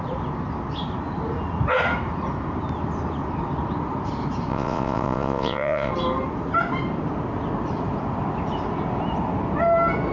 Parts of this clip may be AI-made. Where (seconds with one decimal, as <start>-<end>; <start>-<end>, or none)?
4.5-5.9